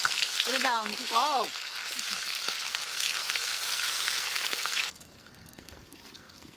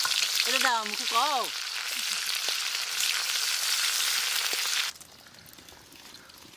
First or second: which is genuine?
second